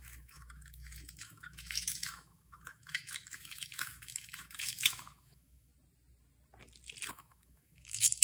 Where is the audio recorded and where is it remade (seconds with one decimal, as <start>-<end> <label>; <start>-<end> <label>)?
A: 0.0-5.7 remade; 5.7-7.1 recorded; 7.1-8.2 remade